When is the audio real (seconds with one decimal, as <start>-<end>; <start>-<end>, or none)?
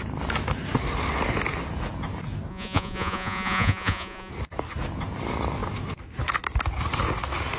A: 0.0-2.5; 4.3-7.6